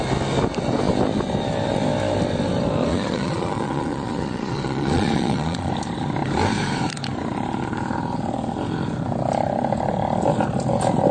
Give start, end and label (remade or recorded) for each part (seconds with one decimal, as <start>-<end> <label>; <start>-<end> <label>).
0.0-2.9 recorded; 2.9-5.7 remade; 5.7-11.1 recorded